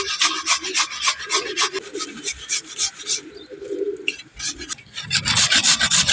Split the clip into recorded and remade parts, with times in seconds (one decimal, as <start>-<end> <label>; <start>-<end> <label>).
0.0-4.3 recorded; 4.3-5.1 remade; 5.1-6.1 recorded